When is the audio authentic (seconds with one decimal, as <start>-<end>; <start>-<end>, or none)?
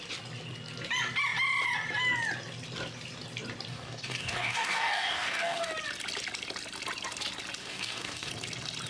0.0-3.7; 5.7-7.6; 8.3-8.9